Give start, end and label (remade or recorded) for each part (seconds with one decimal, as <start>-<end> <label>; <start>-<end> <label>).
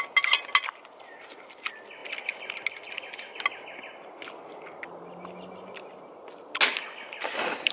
0.0-7.7 recorded